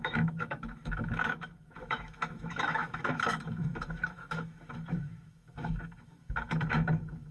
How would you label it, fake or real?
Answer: fake